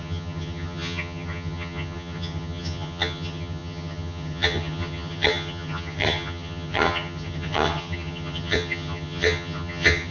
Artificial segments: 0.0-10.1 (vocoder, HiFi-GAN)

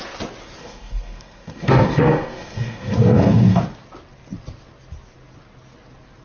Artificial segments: 0.6-3.6 (codec, SNAC)

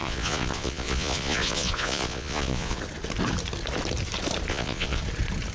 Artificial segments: 0.0-2.8 (vocoder, Vocos); 4.5-5.0